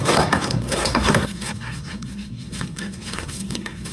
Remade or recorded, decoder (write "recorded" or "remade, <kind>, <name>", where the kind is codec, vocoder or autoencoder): remade, codec, SNAC